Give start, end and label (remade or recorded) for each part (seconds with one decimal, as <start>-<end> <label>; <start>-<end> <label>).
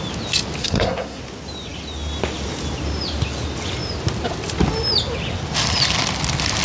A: 0.0-0.6 recorded; 0.6-1.2 remade; 1.2-6.6 recorded